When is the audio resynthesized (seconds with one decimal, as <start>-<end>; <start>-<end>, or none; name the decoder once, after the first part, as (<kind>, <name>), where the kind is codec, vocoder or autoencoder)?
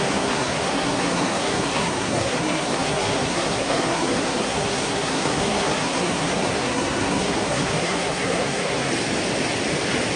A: 0.0-8.9 (codec, SNAC)